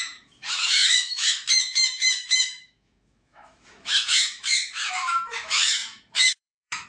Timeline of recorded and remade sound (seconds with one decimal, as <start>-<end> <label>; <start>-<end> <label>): 0.0-6.9 remade